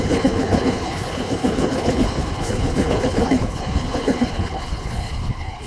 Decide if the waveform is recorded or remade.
remade